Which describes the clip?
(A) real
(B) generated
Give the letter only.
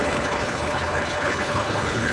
B